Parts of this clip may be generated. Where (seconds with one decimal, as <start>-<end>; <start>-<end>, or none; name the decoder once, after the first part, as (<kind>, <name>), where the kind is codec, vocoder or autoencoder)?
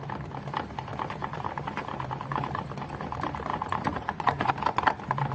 3.5-4.5 (vocoder, Vocos)